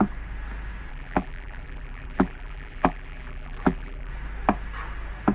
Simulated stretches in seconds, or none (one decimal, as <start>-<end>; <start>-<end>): 0.9-4.1